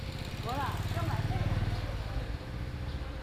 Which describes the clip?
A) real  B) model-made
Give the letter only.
A